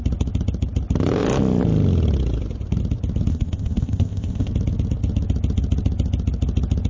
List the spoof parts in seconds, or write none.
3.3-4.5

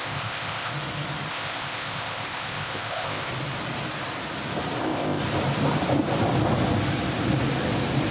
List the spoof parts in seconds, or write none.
0.0-0.7; 1.3-3.3; 4.8-5.2

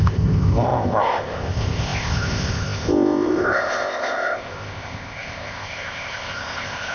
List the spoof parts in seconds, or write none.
0.0-6.9